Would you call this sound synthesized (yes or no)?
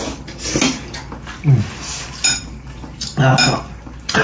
no